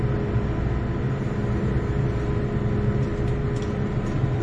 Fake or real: real